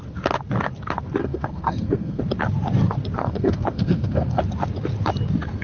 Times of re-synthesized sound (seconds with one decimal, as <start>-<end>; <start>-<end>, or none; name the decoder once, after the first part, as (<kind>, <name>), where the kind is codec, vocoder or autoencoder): 1.2-2.2 (codec, SNAC); 3.2-4.4